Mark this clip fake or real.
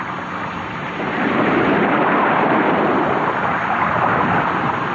real